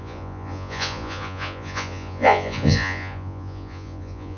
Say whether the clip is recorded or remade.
remade